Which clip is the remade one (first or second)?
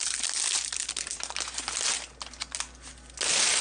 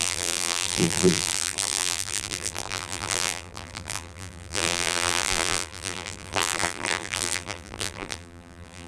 second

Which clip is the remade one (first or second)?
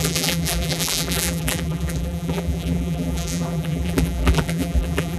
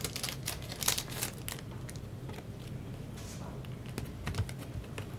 first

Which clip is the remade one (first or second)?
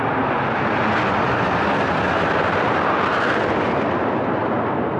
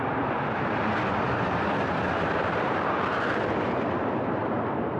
second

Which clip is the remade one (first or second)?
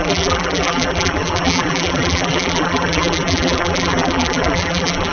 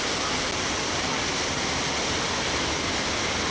first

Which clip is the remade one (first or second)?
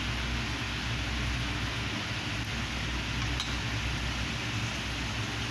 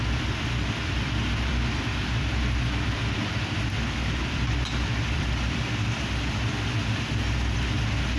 second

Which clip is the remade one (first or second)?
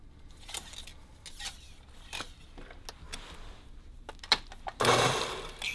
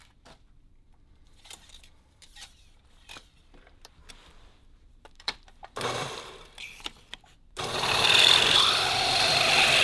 second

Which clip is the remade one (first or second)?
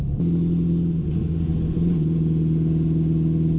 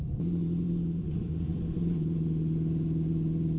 second